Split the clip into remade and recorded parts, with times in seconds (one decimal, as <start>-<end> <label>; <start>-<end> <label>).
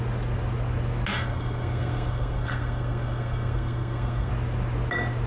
0.0-1.1 recorded; 1.1-4.3 remade; 4.3-5.3 recorded